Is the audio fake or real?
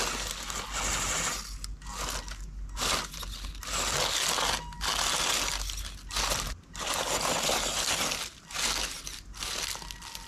real